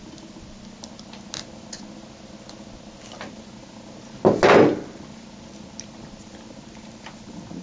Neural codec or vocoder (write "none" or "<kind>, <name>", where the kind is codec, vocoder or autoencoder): none